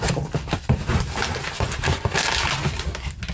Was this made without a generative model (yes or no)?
yes